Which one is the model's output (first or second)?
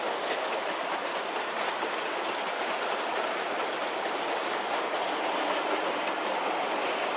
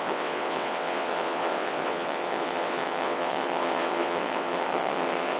second